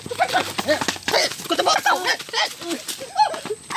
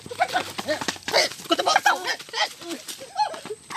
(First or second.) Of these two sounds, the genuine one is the first